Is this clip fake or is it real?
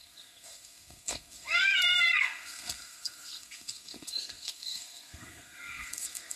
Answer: fake